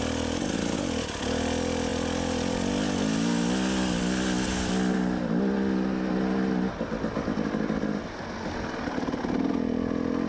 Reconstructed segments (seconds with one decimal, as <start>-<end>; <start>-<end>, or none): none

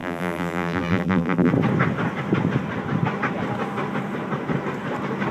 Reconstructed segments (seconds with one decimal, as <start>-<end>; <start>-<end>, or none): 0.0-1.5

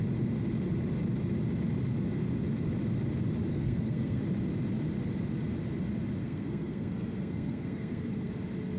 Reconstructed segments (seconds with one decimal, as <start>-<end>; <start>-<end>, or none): 3.5-4.2; 6.2-8.3